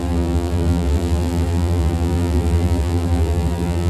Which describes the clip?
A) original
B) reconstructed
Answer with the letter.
B